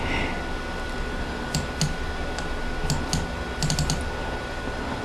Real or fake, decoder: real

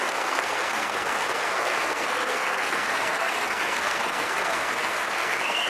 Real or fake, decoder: fake, codec, SNAC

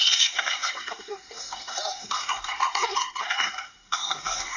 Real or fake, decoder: fake, codec, SNAC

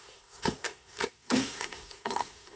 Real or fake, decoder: fake, codec, SNAC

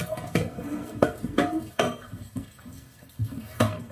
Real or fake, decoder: fake, codec, SNAC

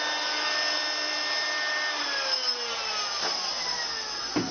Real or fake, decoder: real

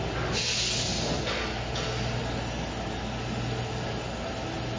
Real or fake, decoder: real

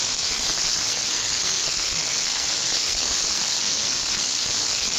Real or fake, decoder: fake, codec, SNAC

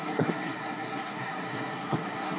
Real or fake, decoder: fake, codec, SNAC